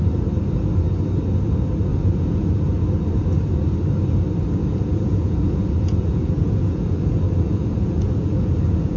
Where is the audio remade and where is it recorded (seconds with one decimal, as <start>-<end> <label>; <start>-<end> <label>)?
0.0-1.9 recorded; 1.9-2.5 remade; 2.5-4.6 recorded; 4.6-9.0 remade